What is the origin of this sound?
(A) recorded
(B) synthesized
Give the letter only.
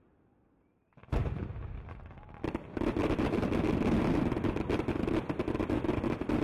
A